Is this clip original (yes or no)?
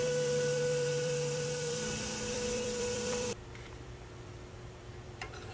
no